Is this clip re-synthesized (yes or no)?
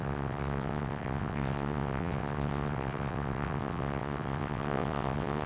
yes